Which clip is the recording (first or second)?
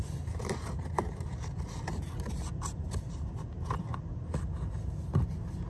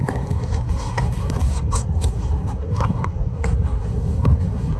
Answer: first